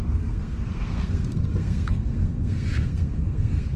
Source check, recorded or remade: remade